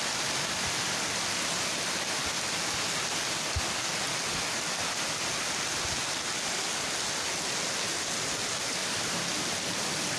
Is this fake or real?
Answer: real